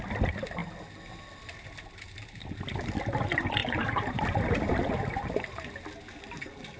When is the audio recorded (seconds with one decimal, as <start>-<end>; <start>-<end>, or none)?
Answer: 0.0-3.6; 4.7-6.8